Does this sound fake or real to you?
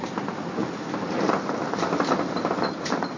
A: real